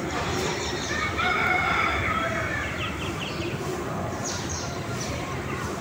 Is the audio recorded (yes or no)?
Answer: no